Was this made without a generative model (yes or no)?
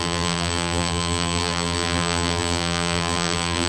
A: no